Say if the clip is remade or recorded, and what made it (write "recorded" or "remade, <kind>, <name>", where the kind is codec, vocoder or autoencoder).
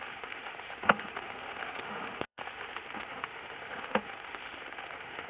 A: remade, autoencoder, DAC-VAE